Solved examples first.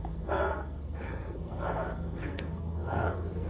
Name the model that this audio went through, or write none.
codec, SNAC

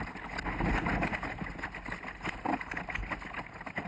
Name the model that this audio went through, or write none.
none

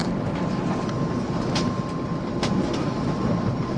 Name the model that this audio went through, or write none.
none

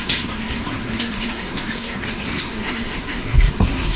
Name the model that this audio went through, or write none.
codec, SNAC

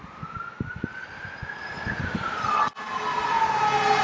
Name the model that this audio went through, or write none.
none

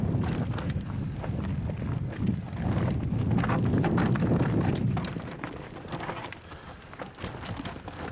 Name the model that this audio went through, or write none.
none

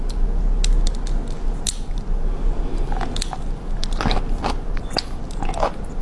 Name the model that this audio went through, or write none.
none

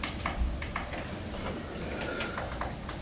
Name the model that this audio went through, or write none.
none